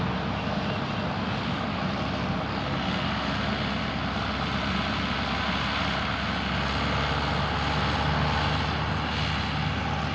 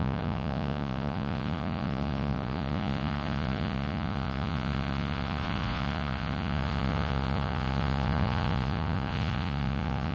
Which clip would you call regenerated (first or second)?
second